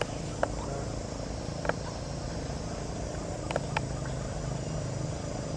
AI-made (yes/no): no